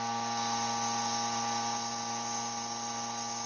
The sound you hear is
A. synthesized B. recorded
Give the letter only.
B